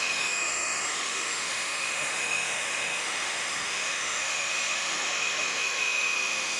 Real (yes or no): no